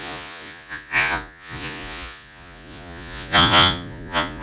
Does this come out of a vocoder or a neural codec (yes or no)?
yes